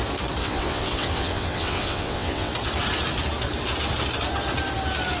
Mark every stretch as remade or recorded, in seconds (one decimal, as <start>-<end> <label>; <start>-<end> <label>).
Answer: 0.0-0.4 recorded; 0.4-2.5 remade; 2.5-5.2 recorded

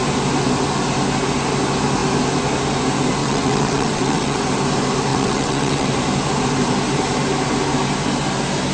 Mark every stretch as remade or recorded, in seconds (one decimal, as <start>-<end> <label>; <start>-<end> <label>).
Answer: 0.0-3.2 recorded; 3.2-4.4 remade; 4.4-5.1 recorded; 5.1-5.9 remade; 5.9-8.7 recorded

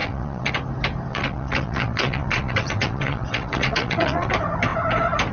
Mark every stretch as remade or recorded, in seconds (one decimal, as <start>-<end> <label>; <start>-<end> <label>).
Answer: 0.0-0.5 remade; 0.5-1.1 recorded; 1.1-4.3 remade; 4.3-5.3 recorded